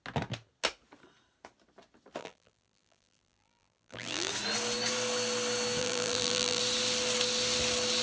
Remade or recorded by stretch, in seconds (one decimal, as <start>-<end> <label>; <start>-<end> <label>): 0.0-2.2 recorded; 2.2-4.3 remade; 4.3-5.8 recorded; 5.8-6.6 remade; 6.6-8.0 recorded